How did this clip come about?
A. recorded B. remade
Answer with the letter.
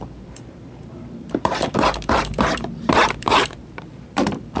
B